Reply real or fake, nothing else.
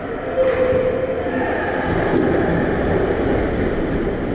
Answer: real